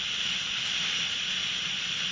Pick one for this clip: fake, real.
real